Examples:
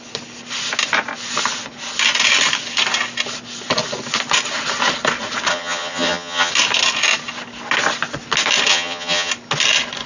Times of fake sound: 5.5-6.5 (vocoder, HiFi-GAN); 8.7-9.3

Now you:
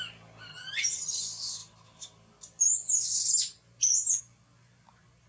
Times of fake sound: 0.5-1.2 (vocoder, HiFi-GAN)

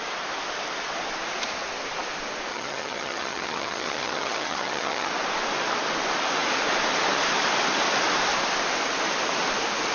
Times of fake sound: 2.5-5.1 (vocoder, HiFi-GAN)

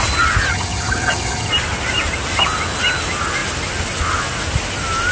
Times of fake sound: 0.5-1.5 (vocoder, HiFi-GAN)

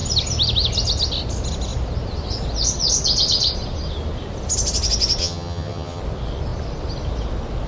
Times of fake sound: 5.2-6.0 (vocoder, HiFi-GAN)

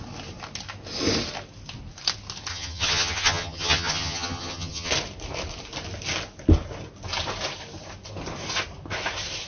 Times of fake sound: 2.5-4.9 (vocoder, HiFi-GAN)